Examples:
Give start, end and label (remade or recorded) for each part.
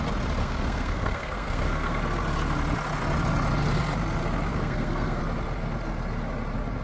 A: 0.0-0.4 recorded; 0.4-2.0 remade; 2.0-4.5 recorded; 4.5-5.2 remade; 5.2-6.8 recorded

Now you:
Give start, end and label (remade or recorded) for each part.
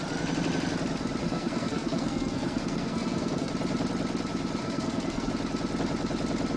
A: 0.0-1.2 recorded; 1.2-3.5 remade; 3.5-4.6 recorded; 4.6-5.3 remade; 5.3-6.6 recorded